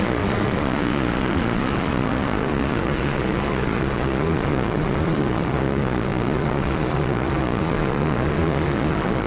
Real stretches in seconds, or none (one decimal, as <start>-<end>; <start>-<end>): none